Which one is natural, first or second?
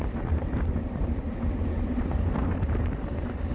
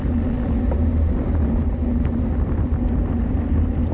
second